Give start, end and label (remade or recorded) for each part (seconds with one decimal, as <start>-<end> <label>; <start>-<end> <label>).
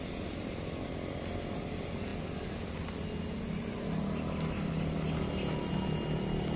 0.0-6.6 recorded